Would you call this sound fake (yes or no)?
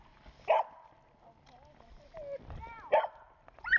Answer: no